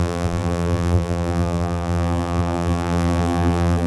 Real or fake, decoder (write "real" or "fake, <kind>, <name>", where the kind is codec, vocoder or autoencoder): fake, vocoder, BigVGAN v2